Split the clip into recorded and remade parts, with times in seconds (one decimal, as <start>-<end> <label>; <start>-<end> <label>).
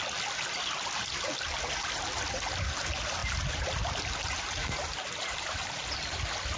0.0-6.6 recorded